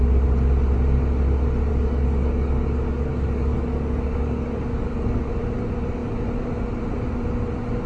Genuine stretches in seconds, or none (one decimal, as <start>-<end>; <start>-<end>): 0.0-1.7; 5.3-7.9